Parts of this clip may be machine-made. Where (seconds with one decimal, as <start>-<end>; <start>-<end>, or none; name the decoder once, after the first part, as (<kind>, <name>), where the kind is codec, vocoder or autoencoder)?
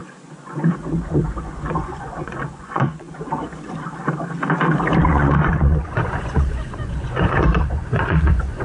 0.0-3.5 (vocoder, Vocos); 5.0-8.6